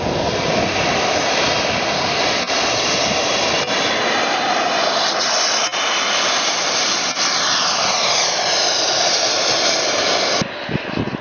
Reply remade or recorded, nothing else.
recorded